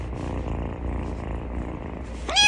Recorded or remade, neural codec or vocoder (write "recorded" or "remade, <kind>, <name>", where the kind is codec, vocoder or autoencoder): recorded